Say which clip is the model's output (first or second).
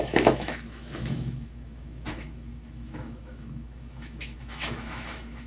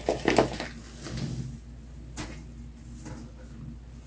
first